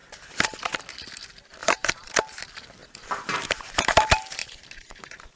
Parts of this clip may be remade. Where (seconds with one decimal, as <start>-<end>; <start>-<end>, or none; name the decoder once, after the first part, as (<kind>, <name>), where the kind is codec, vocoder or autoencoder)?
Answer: 1.6-2.1 (vocoder, BigVGAN v2); 2.8-4.0; 4.4-5.4